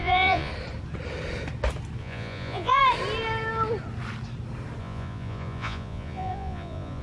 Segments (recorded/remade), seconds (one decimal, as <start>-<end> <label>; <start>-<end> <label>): 0.0-0.5 remade; 0.5-2.0 recorded; 2.0-2.8 remade; 2.8-4.8 recorded; 4.8-7.0 remade

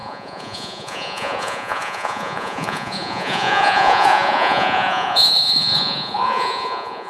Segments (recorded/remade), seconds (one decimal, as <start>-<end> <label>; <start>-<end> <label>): 0.0-7.1 remade

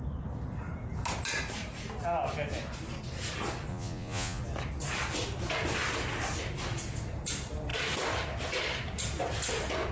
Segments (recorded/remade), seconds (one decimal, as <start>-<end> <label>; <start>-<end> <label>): 0.0-3.7 recorded; 3.7-4.4 remade; 4.4-9.9 recorded

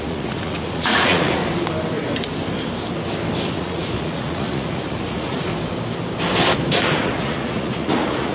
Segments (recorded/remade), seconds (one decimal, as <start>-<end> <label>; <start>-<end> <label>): 0.0-1.4 remade; 1.4-3.5 recorded; 3.5-5.5 remade; 5.5-6.8 recorded; 6.8-8.3 remade